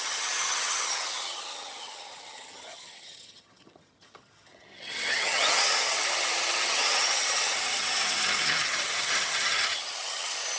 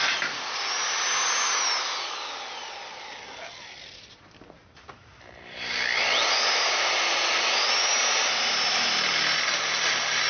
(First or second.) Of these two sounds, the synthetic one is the first